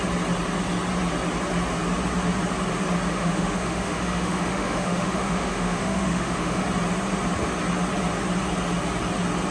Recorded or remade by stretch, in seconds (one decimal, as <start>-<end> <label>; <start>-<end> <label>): 0.0-3.1 recorded; 3.1-6.6 remade; 6.6-9.5 recorded